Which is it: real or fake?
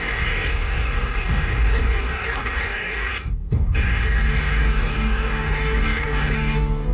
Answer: fake